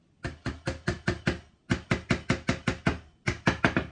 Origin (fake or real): real